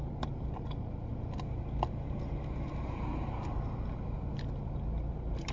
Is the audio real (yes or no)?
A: yes